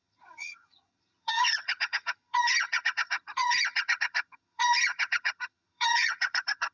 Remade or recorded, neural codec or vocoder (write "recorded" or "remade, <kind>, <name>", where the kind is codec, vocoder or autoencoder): remade, vocoder, HiFi-GAN